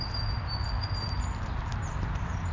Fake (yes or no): no